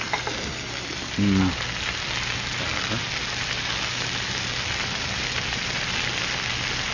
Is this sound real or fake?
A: real